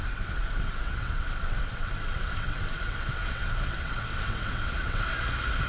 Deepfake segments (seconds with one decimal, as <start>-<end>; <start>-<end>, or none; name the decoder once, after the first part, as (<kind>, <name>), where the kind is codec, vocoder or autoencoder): 0.0-5.1 (vocoder, WaveNeXt)